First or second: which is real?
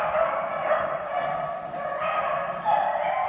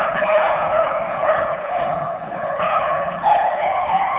first